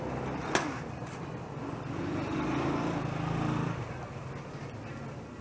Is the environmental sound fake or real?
real